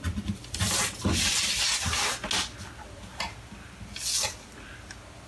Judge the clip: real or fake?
real